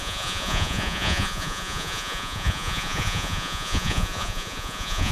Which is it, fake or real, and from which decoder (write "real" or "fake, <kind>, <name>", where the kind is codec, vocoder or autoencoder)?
fake, vocoder, Vocos